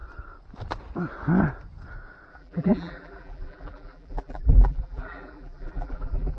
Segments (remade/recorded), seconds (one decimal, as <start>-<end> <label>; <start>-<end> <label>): 0.0-2.3 recorded; 2.3-6.4 remade